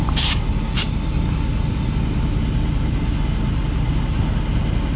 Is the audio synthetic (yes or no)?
no